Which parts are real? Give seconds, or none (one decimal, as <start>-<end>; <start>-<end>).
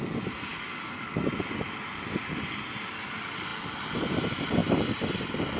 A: 0.0-0.5; 1.1-5.6